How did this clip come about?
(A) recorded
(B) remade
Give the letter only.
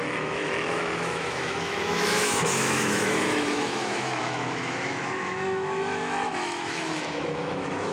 B